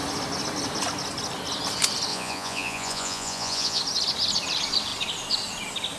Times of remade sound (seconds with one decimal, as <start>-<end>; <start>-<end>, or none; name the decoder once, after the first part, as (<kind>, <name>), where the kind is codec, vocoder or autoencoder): 2.1-3.8 (vocoder, Vocos)